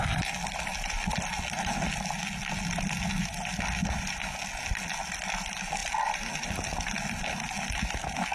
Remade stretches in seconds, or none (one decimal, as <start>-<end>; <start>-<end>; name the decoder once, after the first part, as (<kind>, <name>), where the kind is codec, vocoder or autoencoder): none